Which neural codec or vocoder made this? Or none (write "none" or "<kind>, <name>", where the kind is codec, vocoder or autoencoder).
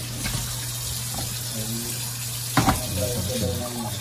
none